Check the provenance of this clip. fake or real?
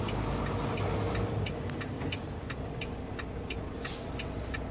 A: real